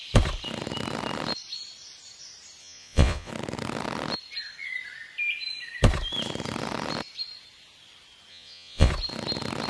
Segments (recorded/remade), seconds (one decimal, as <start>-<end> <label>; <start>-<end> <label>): 0.0-2.6 recorded; 2.6-3.3 remade; 3.3-8.3 recorded; 8.3-8.9 remade; 8.9-9.7 recorded